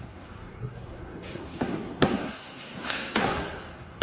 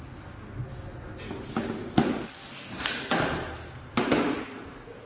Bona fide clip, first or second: second